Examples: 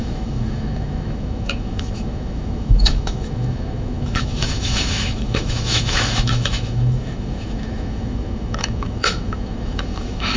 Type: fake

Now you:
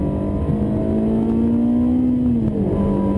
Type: real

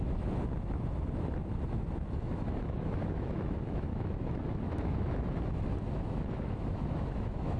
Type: fake